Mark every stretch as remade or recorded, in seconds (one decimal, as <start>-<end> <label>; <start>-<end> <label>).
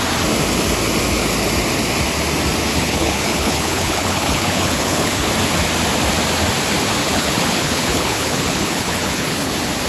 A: 0.0-2.7 recorded; 2.7-5.3 remade; 5.3-7.0 recorded; 7.0-9.5 remade; 9.5-9.9 recorded